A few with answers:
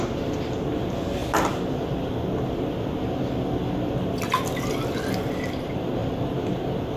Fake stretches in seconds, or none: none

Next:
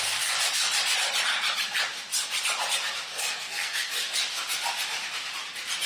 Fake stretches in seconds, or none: 3.1-3.9

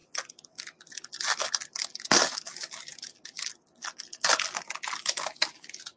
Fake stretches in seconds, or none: none

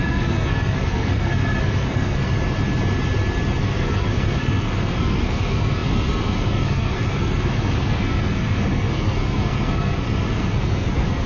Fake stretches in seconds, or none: 0.0-2.3; 3.6-11.3